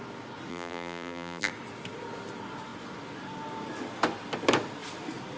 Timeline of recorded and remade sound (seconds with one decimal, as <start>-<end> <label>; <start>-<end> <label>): 0.0-0.5 recorded; 0.5-1.5 remade; 1.5-5.4 recorded